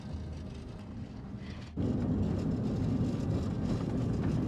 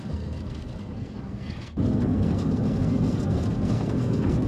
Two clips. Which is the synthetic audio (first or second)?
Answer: second